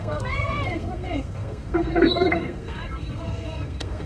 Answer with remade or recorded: remade